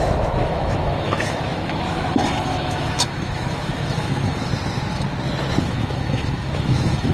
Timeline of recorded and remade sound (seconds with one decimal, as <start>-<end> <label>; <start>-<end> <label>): 0.0-4.5 remade; 4.5-5.6 recorded; 5.6-7.1 remade